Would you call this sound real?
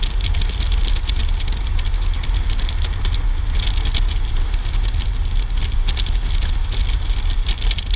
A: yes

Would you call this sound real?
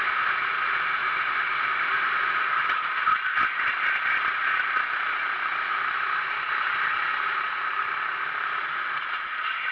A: yes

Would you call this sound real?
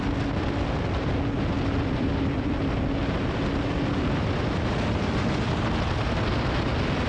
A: yes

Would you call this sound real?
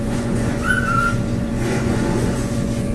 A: no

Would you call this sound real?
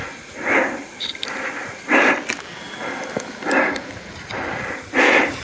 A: yes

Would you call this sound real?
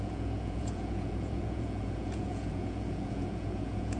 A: no